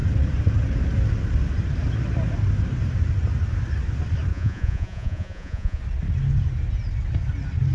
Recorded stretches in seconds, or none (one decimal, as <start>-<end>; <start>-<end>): 0.0-4.3; 5.8-7.7